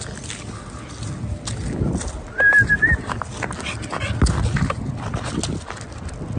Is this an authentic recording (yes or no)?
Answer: yes